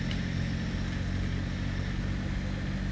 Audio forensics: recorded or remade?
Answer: recorded